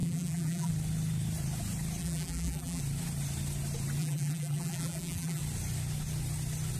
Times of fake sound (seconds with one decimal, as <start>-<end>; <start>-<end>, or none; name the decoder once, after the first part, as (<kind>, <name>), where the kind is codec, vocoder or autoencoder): 0.0-0.7 (vocoder, BigVGAN v2); 2.0-2.8; 4.0-5.4